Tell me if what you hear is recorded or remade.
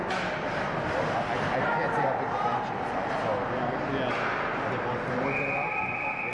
recorded